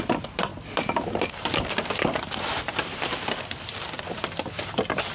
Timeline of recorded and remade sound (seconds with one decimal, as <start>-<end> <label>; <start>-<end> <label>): 0.0-5.1 recorded